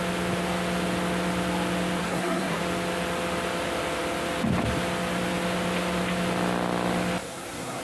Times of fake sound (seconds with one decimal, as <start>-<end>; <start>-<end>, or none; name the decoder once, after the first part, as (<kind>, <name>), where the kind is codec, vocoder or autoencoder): 2.0-2.6 (codec, SNAC); 7.2-7.8